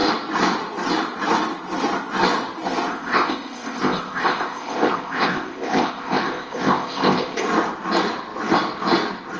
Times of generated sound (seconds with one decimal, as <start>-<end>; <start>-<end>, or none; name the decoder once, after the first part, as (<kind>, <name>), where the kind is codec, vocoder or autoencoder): 2.9-7.4 (codec, ZipCodec)